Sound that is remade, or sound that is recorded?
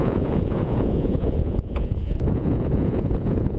remade